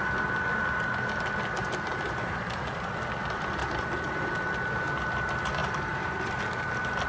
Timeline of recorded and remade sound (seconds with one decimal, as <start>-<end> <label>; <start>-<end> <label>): 0.0-1.6 recorded; 1.6-2.9 remade; 2.9-3.6 recorded; 3.6-4.3 remade; 4.3-5.6 recorded; 5.6-6.4 remade; 6.4-7.1 recorded